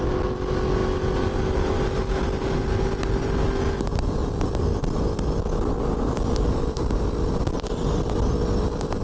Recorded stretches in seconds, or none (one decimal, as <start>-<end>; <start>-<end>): 0.0-4.2; 7.3-9.0